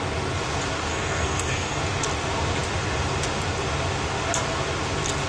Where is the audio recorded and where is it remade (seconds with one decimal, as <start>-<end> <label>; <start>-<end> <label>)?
0.0-0.9 recorded; 0.9-1.8 remade; 1.8-5.3 recorded